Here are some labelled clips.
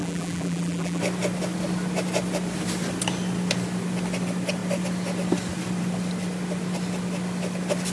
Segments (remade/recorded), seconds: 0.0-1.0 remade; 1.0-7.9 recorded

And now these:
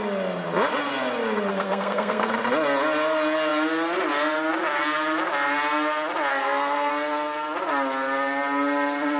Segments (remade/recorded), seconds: 0.0-1.5 recorded; 1.5-2.3 remade; 2.3-6.3 recorded; 6.3-6.9 remade; 6.9-9.2 recorded